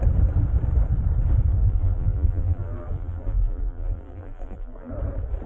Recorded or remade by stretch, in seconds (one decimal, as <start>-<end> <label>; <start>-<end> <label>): 0.0-1.6 recorded; 1.6-4.9 remade; 4.9-5.5 recorded